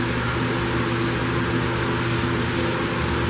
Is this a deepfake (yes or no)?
no